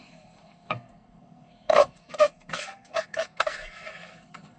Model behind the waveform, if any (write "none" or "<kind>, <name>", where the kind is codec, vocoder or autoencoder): codec, SNAC